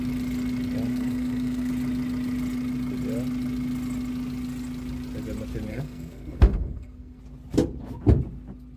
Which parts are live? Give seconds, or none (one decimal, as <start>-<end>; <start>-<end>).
0.0-0.9; 1.7-5.7; 7.2-8.8